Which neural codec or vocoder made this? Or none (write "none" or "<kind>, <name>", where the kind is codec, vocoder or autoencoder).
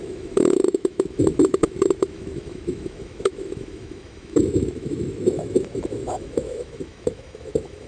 autoencoder, DAC-VAE